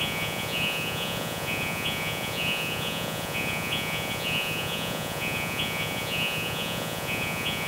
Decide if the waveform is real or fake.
fake